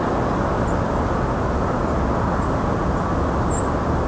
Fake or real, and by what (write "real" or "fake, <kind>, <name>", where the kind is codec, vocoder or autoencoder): real